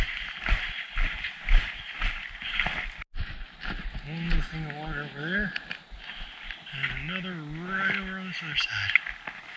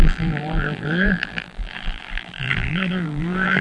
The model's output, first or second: second